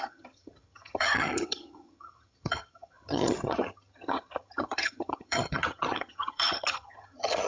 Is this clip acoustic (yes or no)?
no